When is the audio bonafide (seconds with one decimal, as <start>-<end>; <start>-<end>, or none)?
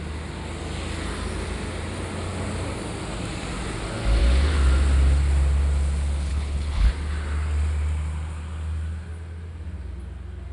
0.0-6.3; 6.9-10.5